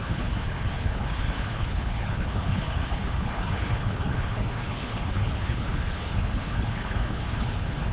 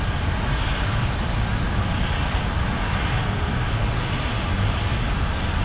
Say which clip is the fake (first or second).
first